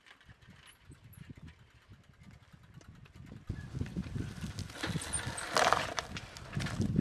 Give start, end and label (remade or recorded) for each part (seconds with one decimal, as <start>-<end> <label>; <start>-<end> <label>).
0.0-7.0 recorded